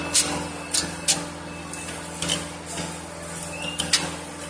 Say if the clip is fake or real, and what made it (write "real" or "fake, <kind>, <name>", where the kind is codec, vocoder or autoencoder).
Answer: real